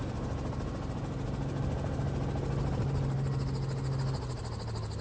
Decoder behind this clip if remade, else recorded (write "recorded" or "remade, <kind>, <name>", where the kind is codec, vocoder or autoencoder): recorded